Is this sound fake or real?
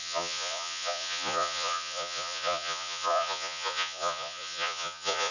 fake